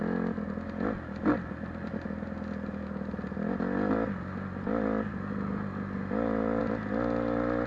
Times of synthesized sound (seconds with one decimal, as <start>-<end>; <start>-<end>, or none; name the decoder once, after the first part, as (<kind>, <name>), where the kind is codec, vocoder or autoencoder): none